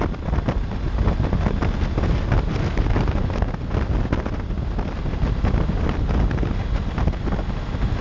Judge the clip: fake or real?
real